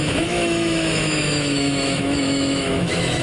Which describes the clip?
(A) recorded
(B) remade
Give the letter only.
B